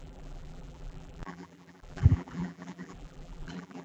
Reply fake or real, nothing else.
fake